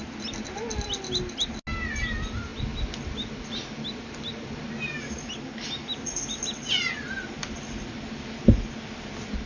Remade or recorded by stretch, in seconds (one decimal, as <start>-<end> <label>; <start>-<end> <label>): 0.0-9.5 recorded